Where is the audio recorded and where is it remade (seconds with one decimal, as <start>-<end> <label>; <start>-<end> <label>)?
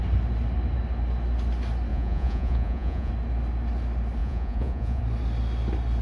0.0-1.9 recorded; 1.9-3.1 remade; 3.1-4.2 recorded; 4.2-5.0 remade; 5.0-6.0 recorded